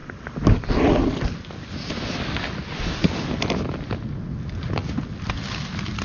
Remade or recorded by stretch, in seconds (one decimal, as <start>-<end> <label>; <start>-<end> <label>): 0.0-6.0 recorded